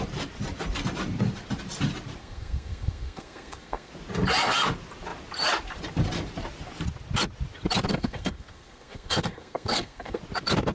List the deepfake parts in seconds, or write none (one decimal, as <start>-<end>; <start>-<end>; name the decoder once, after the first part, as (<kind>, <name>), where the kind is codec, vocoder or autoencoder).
2.2-3.9 (codec, SNAC); 7.9-10.2